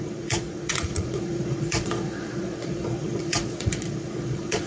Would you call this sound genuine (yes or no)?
no